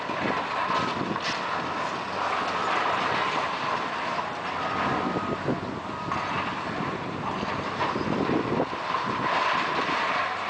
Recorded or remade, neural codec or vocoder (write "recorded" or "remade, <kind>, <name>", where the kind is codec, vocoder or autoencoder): recorded